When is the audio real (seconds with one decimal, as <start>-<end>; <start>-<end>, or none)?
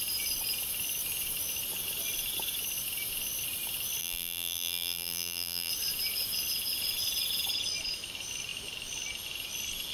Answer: 0.0-4.0; 5.7-9.9